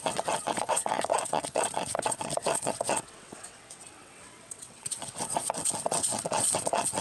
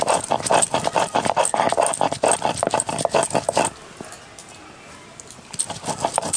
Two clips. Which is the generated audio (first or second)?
first